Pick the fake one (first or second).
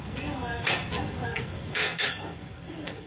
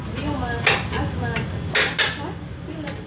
first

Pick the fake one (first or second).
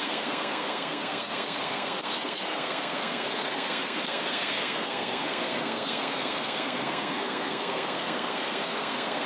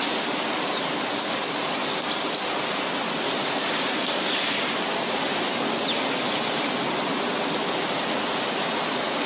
first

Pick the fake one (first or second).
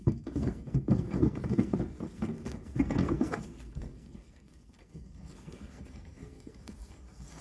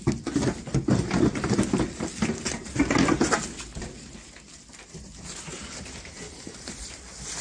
first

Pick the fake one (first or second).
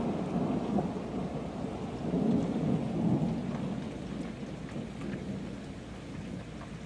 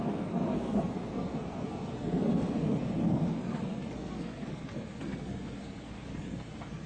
second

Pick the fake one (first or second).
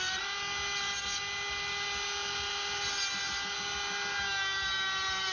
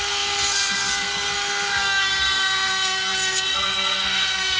second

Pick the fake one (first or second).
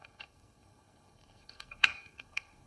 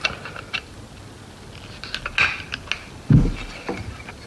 first